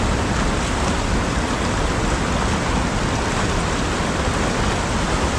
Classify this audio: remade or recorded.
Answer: recorded